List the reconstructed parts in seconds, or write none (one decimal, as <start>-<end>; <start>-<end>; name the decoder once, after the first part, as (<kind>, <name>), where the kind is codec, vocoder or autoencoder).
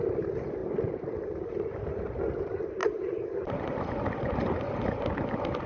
2.8-3.9 (vocoder, BigVGAN v2)